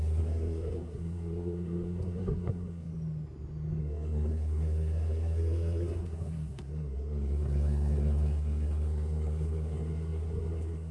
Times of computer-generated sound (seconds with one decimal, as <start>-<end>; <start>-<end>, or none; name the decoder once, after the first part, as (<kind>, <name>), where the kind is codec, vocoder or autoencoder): 0.0-2.9 (codec, SNAC); 3.8-10.9